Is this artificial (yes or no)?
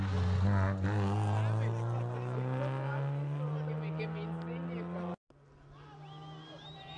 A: no